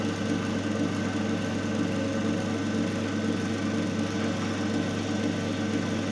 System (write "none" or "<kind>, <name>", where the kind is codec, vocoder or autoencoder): none